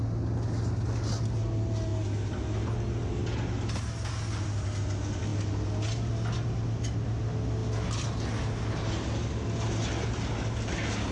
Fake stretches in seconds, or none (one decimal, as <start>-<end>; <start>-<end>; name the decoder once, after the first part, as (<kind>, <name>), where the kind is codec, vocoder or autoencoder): none